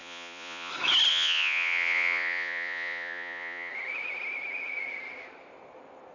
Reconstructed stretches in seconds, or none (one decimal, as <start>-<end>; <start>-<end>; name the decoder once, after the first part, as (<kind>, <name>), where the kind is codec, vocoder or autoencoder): 0.0-0.7 (vocoder, Vocos); 1.1-3.7